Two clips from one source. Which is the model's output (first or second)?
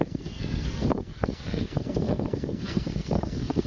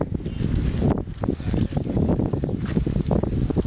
first